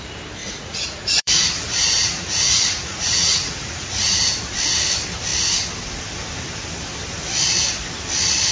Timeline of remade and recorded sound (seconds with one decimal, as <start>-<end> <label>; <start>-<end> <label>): 0.0-0.4 recorded; 0.4-4.2 remade; 4.2-8.5 recorded